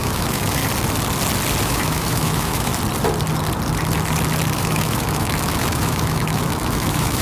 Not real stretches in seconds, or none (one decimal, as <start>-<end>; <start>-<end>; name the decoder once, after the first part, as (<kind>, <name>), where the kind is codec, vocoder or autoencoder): 0.0-0.6 (autoencoder, DAC-VAE); 1.6-2.7; 4.6-7.2